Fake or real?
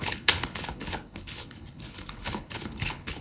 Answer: fake